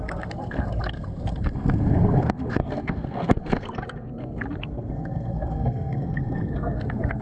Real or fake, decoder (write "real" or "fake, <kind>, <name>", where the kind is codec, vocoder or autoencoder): fake, codec, SNAC